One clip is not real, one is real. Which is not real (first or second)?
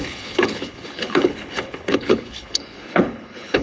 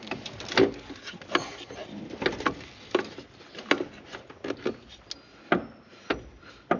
first